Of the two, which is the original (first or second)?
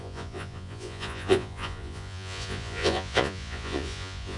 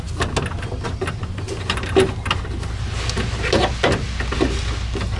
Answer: second